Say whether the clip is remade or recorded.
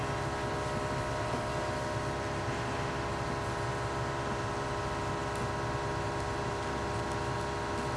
recorded